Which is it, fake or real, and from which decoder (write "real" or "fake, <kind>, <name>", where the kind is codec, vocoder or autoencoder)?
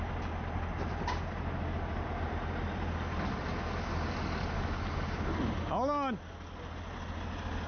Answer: real